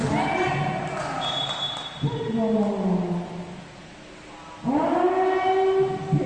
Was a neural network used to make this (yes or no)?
no